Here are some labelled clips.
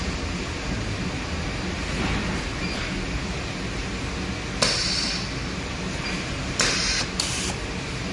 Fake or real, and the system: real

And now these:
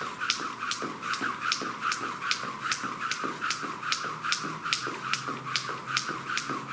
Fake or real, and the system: real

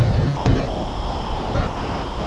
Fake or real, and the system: real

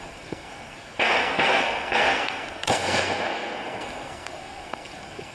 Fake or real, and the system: fake, codec, SNAC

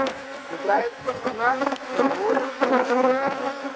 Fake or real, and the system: fake, codec, SNAC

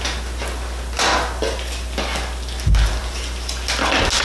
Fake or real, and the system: real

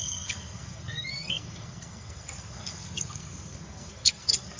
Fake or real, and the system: fake, codec, SNAC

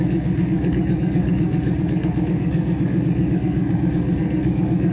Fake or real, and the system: fake, codec, SNAC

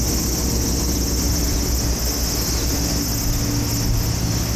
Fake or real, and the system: real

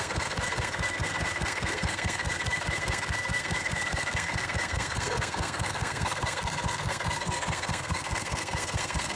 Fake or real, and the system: fake, codec, SNAC